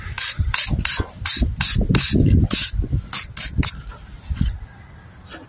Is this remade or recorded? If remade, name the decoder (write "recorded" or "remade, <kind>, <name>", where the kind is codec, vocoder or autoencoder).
recorded